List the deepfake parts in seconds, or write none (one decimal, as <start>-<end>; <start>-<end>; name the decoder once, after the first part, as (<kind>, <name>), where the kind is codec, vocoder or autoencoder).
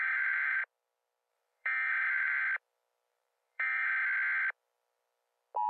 0.0-0.6 (vocoder, BigVGAN v2); 1.3-2.4; 3.1-3.9